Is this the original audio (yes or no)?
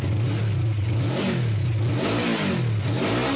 yes